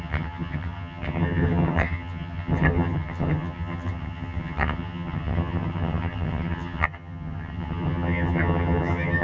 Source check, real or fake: fake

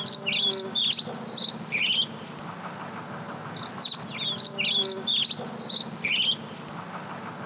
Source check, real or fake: real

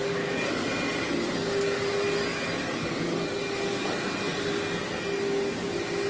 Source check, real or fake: real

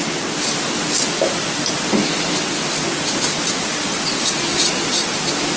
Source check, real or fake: real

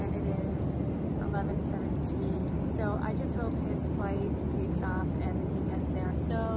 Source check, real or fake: real